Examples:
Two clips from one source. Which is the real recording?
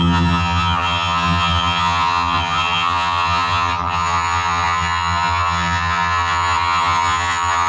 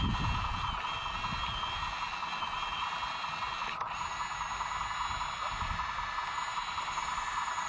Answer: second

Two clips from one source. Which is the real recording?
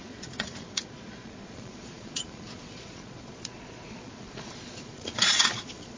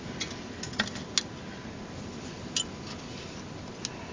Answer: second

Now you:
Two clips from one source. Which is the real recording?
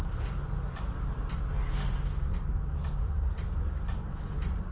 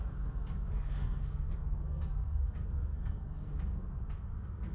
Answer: first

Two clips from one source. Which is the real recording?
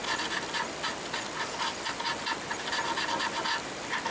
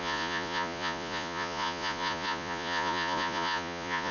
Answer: first